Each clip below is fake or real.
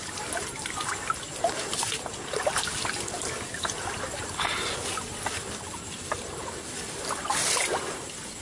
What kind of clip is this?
fake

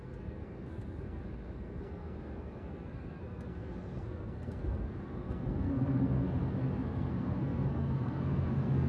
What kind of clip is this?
fake